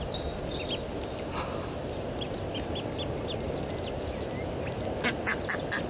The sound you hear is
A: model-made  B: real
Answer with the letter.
B